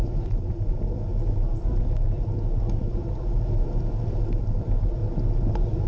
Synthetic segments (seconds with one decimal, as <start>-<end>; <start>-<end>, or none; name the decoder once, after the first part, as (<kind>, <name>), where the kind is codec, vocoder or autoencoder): 0.0-5.0 (vocoder, BigVGAN v2)